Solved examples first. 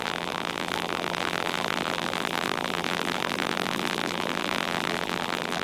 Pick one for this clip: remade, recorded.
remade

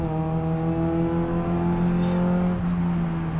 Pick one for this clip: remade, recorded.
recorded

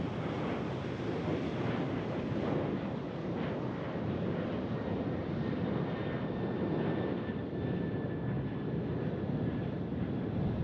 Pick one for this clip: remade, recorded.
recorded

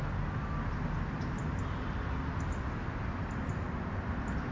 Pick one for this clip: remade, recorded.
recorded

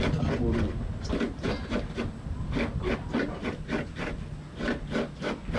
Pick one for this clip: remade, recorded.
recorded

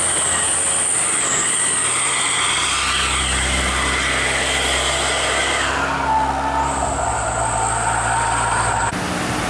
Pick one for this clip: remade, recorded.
recorded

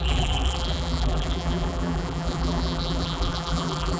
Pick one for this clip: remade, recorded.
remade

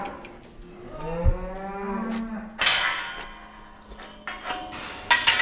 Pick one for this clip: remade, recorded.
recorded